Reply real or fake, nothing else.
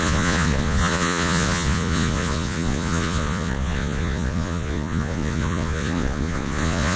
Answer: fake